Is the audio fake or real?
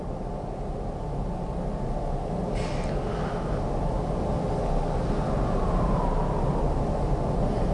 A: real